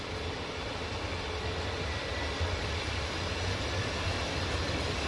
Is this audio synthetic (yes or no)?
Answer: no